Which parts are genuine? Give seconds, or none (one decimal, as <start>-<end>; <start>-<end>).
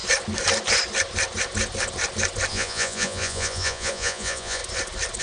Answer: 0.0-2.5; 4.6-5.2